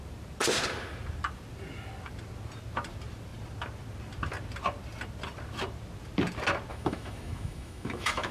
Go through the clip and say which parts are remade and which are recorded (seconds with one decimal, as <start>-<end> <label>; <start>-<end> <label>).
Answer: 0.0-6.7 recorded; 6.7-8.3 remade